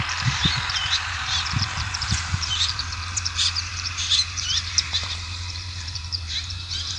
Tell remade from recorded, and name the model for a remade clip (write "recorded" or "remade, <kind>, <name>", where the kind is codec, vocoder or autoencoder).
remade, vocoder, BigVGAN v2